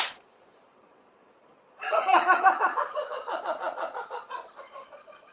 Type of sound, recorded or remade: remade